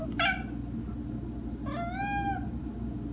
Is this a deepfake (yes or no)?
no